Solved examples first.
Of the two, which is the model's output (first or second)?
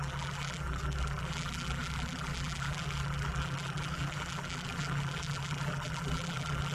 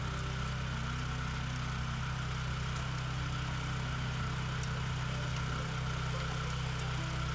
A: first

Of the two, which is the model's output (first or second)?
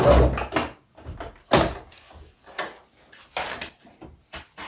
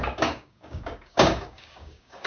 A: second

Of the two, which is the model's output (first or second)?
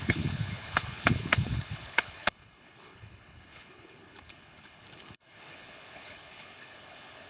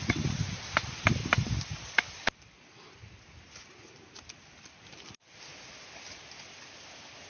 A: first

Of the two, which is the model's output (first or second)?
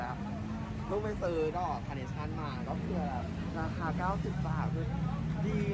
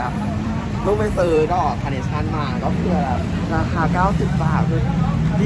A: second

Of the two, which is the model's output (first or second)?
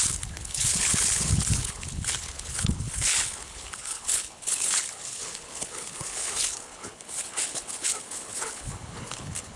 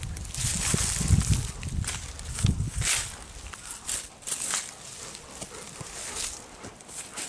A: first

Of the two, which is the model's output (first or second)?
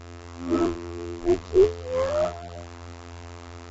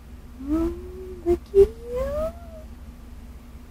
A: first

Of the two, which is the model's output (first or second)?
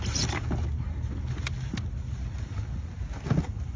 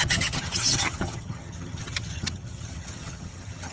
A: second